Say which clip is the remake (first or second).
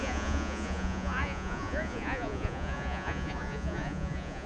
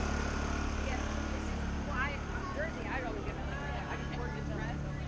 first